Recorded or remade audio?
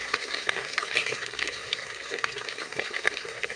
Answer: remade